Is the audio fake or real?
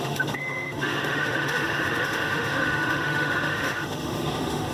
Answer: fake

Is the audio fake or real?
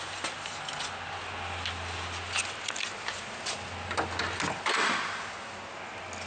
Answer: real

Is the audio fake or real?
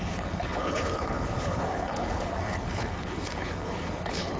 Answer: fake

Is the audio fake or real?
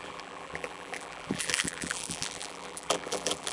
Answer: fake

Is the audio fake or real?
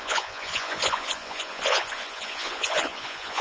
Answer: fake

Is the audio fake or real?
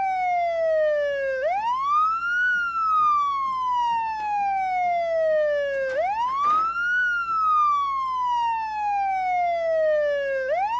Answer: real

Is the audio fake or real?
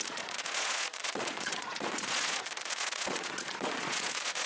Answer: fake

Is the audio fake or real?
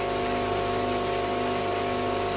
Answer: real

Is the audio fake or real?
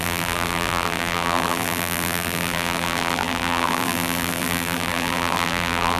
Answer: fake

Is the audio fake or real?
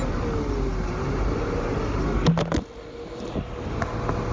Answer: real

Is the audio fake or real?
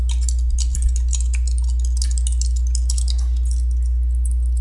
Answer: real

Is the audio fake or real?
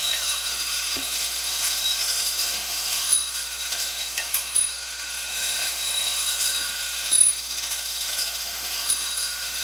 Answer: fake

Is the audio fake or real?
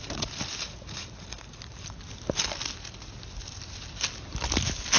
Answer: real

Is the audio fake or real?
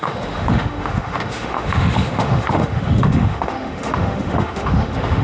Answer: fake